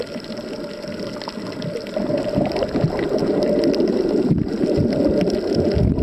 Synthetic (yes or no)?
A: no